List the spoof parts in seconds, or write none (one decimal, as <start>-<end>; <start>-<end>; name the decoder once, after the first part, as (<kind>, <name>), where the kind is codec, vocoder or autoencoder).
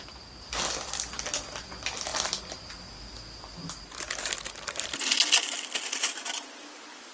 none